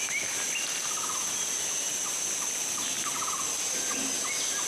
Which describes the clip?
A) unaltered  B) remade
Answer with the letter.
A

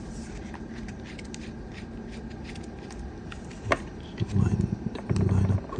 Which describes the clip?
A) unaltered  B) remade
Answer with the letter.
A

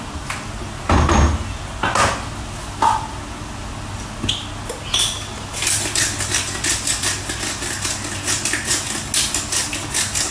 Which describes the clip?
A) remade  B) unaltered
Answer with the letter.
B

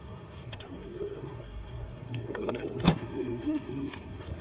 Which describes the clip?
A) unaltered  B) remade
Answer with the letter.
B